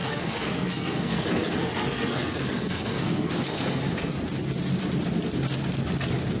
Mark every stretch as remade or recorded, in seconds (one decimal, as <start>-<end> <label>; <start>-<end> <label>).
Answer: 0.0-3.8 remade; 3.8-6.4 recorded